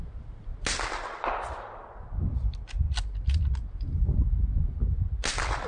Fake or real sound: real